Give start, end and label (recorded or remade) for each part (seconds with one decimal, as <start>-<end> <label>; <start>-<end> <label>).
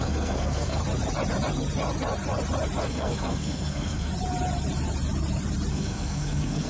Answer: 0.0-0.8 remade; 0.8-2.8 recorded; 2.8-4.1 remade; 4.1-5.7 recorded; 5.7-6.7 remade